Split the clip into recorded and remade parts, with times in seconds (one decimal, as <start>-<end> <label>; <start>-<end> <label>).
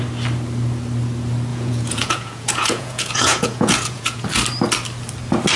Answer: 0.0-1.5 recorded; 1.5-4.2 remade; 4.2-5.6 recorded